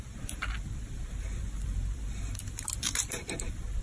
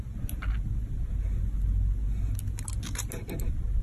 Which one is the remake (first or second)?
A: first